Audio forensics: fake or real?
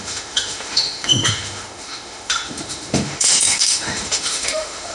fake